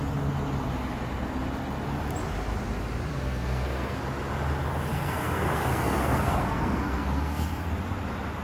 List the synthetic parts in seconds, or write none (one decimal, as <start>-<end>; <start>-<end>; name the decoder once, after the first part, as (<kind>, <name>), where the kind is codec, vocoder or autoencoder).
3.1-4.0 (codec, SNAC); 4.9-7.7